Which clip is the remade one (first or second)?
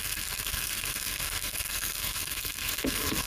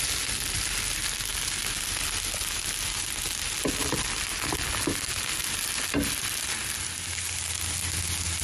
first